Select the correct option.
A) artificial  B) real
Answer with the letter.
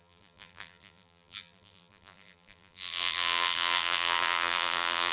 A